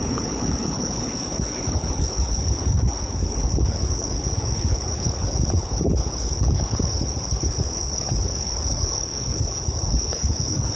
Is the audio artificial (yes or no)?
yes